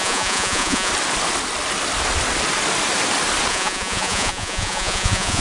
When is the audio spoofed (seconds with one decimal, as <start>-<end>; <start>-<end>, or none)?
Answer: 0.0-0.9; 3.5-5.4